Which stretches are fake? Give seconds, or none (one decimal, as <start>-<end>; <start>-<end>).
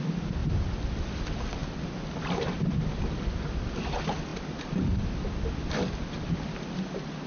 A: none